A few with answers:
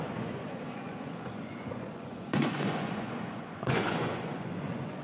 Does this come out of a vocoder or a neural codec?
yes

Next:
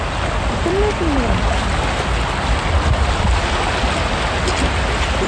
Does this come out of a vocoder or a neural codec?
no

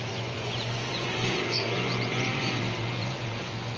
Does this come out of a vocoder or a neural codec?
yes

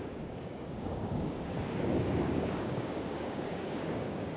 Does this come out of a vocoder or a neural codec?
yes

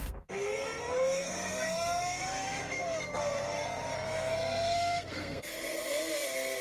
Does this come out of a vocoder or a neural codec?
yes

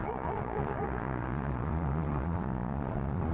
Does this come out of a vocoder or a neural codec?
yes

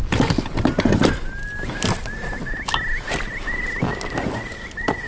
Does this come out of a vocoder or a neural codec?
no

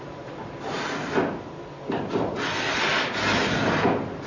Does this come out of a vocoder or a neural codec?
no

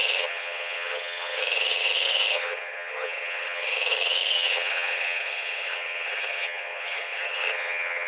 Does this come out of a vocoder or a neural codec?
yes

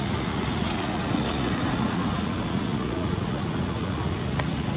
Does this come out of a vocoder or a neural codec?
yes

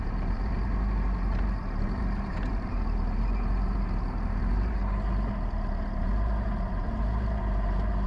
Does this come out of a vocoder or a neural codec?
yes